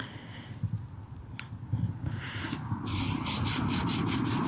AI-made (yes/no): no